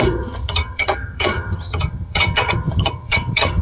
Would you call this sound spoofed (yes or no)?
yes